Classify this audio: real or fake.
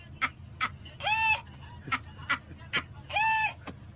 real